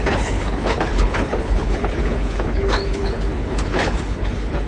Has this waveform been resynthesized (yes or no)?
yes